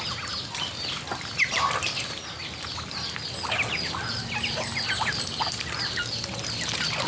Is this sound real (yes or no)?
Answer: yes